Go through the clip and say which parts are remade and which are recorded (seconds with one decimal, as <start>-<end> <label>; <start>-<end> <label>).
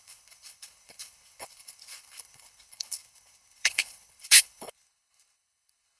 0.0-6.0 remade